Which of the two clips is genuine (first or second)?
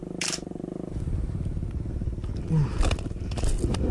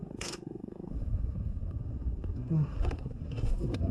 first